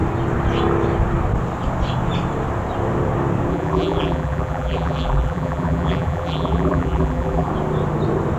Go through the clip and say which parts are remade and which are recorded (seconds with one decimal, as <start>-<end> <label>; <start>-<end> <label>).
0.0-3.5 recorded; 3.5-7.5 remade; 7.5-8.4 recorded